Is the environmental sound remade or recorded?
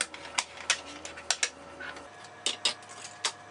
recorded